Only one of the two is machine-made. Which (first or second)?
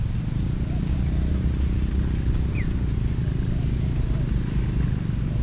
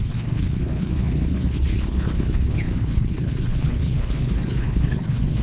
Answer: second